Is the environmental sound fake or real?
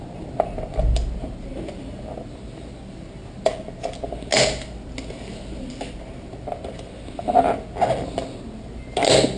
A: real